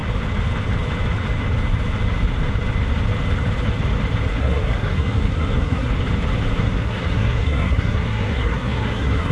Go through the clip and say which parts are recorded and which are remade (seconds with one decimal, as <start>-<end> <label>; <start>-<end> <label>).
0.0-4.3 recorded; 4.3-5.9 remade; 5.9-6.6 recorded; 6.6-9.3 remade